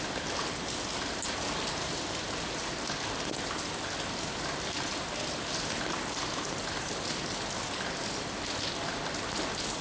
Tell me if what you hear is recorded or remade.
recorded